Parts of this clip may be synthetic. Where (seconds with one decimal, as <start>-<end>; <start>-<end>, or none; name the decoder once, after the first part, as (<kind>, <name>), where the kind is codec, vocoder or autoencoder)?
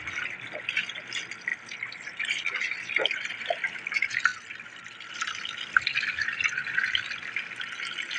none